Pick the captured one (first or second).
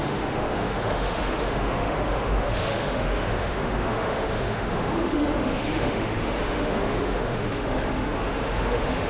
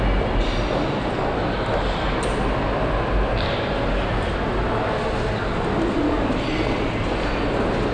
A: second